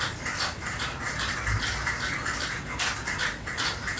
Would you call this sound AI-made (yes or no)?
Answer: no